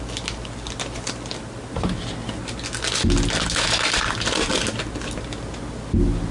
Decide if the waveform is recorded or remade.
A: recorded